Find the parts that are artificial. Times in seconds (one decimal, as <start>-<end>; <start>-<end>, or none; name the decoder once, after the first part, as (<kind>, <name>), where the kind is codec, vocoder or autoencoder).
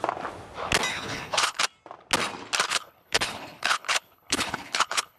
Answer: 0.9-1.6 (codec, HILCodec); 2.7-5.2